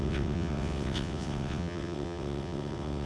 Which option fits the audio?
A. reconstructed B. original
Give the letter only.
A